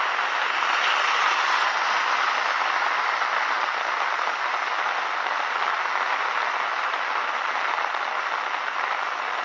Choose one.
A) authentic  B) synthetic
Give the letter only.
A